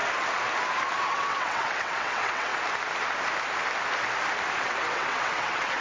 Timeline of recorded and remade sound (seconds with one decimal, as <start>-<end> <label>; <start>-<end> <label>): 0.0-1.0 recorded; 1.0-2.5 remade; 2.5-4.6 recorded; 4.6-5.8 remade